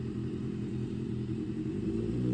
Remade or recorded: remade